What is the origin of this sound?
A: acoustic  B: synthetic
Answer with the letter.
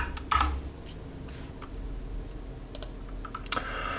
A